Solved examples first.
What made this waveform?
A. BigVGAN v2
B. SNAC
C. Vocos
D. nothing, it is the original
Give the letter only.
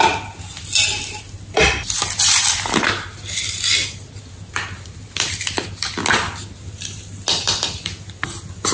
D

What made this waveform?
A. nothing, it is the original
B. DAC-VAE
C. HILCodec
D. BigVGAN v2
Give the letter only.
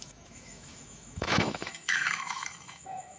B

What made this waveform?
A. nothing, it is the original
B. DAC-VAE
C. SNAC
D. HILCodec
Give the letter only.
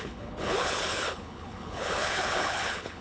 D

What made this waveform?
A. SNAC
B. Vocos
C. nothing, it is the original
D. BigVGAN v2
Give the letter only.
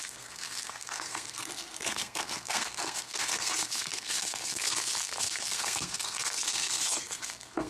A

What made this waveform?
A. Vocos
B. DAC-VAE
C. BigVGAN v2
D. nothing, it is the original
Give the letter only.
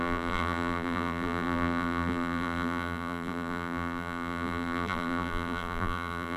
C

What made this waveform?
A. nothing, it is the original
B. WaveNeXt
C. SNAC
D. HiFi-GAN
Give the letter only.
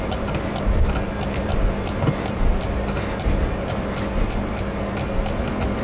A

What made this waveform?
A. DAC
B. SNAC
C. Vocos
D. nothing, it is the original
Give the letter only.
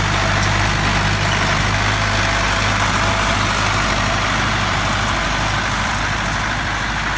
D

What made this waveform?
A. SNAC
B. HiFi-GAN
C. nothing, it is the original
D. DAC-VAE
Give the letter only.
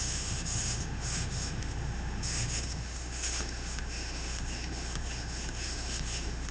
D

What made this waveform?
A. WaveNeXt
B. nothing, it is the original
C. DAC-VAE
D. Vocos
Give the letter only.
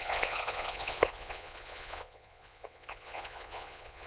D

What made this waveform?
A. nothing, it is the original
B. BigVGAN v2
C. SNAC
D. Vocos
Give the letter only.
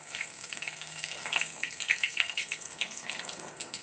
C